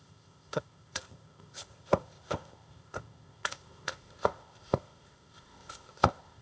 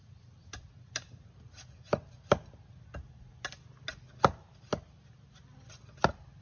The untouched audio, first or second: second